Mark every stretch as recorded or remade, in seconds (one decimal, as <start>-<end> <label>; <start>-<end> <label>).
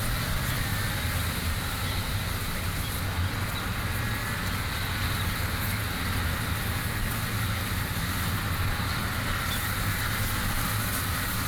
0.0-11.5 recorded